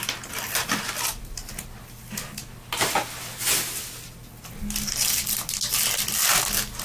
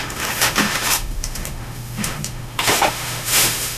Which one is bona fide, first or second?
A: first